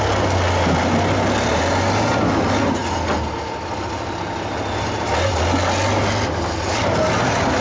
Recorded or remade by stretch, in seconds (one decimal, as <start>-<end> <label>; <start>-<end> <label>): 0.0-7.6 recorded